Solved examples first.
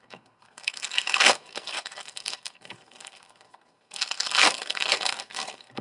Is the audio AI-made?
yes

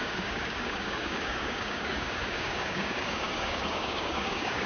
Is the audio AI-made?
yes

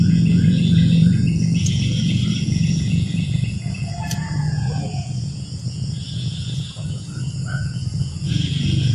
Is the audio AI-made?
yes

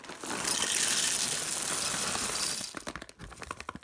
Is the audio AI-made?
no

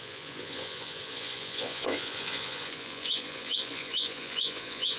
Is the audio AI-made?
yes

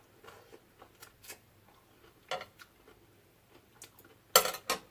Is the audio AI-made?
no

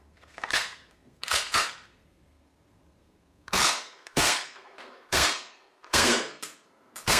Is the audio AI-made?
yes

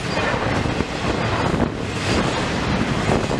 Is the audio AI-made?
no